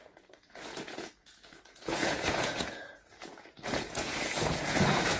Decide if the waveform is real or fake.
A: fake